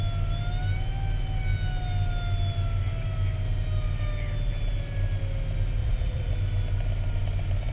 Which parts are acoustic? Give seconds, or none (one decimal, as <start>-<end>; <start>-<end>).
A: 0.0-5.8; 6.3-7.7